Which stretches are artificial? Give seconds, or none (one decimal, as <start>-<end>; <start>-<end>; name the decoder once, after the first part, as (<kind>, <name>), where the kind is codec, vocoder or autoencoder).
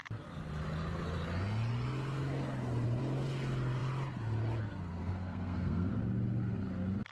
5.0-5.9 (codec, SNAC)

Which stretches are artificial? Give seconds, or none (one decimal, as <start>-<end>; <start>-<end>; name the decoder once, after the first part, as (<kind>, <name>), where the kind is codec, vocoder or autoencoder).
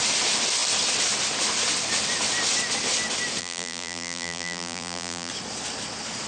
3.4-5.3 (vocoder, BigVGAN v2)